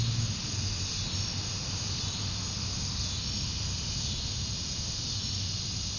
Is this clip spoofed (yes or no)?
no